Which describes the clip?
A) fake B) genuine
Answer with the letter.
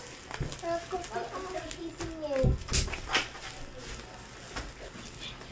B